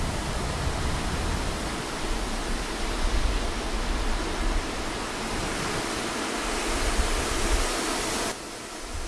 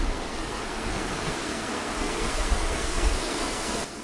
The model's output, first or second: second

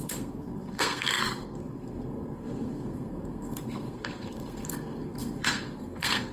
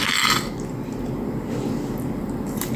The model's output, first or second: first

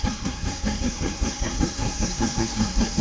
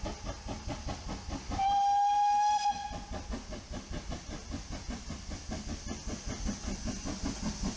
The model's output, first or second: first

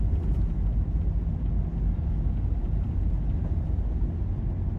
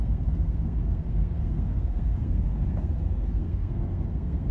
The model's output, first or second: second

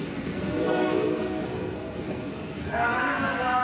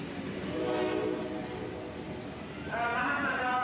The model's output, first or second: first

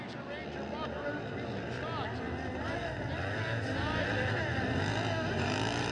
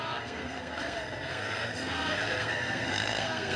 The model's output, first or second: second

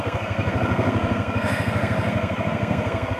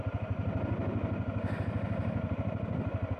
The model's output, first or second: first